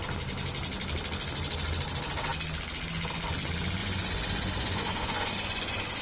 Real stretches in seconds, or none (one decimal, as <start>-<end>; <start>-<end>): 0.0-3.8